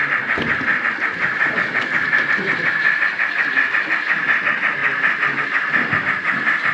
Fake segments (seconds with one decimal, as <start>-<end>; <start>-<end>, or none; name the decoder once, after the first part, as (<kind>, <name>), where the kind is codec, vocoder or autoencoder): none